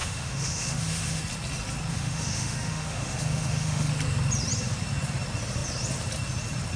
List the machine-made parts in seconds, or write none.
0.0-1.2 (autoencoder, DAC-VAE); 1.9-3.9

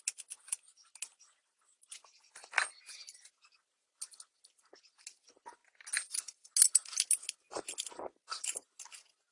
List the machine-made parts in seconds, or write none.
none

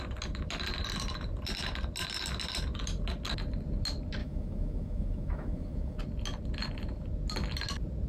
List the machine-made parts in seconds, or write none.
4.2-6.0 (autoencoder, DAC-VAE)

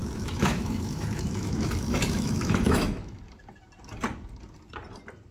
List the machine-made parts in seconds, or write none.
0.0-3.2 (autoencoder, DAC-VAE)

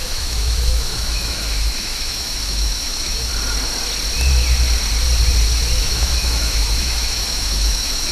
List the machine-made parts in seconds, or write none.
0.0-3.3 (autoencoder, DAC-VAE); 5.8-8.1